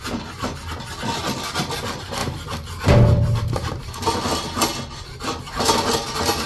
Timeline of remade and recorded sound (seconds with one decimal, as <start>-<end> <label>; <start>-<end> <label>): 0.0-0.6 remade; 0.6-1.3 recorded; 1.3-2.2 remade; 2.2-2.9 recorded; 2.9-4.3 remade; 4.3-4.9 recorded; 4.9-6.5 remade